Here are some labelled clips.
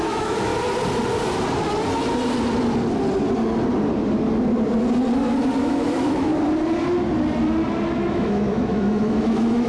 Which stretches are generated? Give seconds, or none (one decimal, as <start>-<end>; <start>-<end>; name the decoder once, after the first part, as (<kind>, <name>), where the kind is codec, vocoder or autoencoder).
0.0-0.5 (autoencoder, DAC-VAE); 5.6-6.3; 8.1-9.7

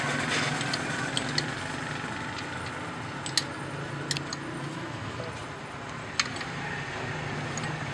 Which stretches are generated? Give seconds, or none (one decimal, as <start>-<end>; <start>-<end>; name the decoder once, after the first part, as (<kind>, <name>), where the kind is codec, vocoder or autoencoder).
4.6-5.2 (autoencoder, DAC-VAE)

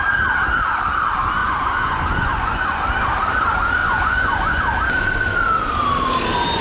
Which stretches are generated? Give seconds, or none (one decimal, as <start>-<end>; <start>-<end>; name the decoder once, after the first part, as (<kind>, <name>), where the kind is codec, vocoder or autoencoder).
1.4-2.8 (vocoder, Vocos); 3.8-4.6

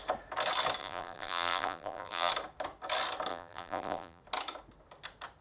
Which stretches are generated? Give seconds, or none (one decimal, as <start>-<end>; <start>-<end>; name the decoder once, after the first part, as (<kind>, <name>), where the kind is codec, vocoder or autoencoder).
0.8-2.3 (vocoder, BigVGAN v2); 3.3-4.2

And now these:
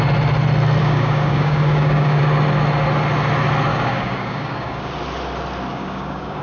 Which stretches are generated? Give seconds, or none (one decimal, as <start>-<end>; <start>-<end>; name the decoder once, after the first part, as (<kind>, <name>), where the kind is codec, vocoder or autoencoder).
0.8-2.2 (codec, DAC); 3.7-4.9; 5.7-6.4

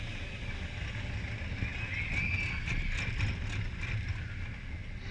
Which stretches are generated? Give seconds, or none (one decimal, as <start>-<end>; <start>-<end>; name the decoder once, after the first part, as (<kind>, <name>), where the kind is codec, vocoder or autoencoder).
none